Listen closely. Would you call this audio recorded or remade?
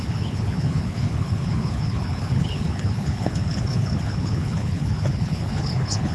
remade